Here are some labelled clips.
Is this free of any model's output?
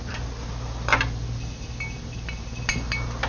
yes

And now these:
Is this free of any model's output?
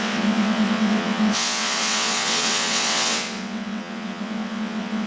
no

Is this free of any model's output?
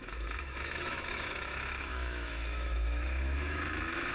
no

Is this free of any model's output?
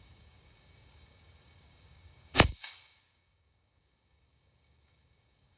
no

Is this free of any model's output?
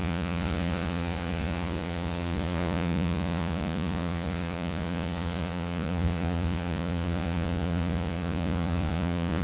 no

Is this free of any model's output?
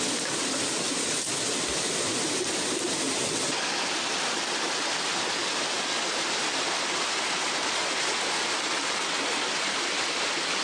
yes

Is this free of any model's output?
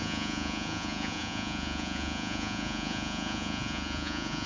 no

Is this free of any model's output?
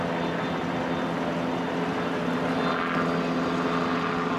yes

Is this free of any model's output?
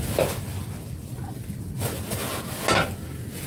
yes